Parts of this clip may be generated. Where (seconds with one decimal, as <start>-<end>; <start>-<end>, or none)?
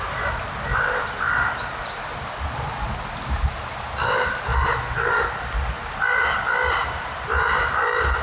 none